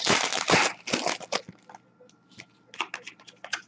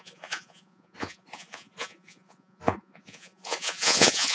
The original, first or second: first